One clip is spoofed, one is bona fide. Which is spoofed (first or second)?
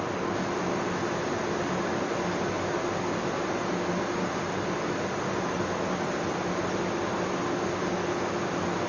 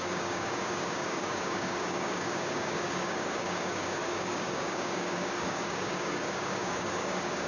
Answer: second